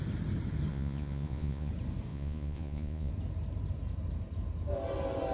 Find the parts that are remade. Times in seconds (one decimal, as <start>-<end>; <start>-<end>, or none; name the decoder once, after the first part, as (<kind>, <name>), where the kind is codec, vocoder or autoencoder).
0.7-1.7 (vocoder, Vocos); 2.1-3.1